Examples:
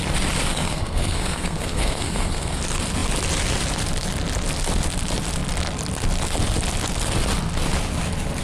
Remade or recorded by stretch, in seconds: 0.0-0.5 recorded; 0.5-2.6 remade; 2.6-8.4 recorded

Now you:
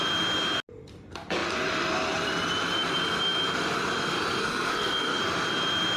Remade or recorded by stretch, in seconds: 0.0-4.4 recorded; 4.4-5.2 remade; 5.2-6.0 recorded

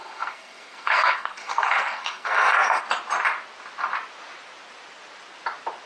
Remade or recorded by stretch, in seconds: 0.0-2.8 remade; 2.8-5.9 recorded

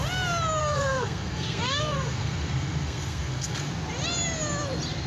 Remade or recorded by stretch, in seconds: 0.0-0.6 recorded; 0.6-3.7 remade; 3.7-5.1 recorded

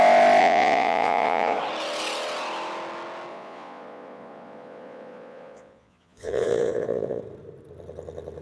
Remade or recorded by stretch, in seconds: 0.0-0.4 recorded; 0.4-1.6 remade; 1.6-3.3 recorded; 3.3-7.2 remade; 7.2-8.4 recorded

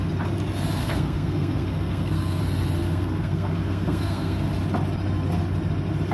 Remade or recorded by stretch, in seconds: 0.0-0.8 recorded; 0.8-2.4 remade; 2.4-2.8 recorded; 2.8-4.5 remade; 4.5-6.1 recorded

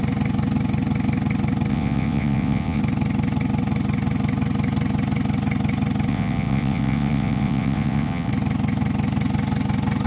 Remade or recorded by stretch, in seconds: 0.0-1.7 recorded; 1.7-2.8 remade; 2.8-6.1 recorded; 6.1-8.3 remade; 8.3-10.1 recorded

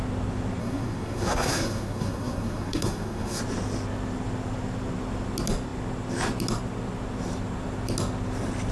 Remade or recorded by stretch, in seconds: 0.0-0.6 recorded; 0.6-3.4 remade; 3.4-8.7 recorded